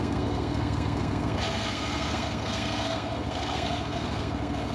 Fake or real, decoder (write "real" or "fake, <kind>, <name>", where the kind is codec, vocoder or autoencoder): fake, codec, SNAC